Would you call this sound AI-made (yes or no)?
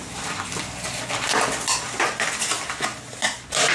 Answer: no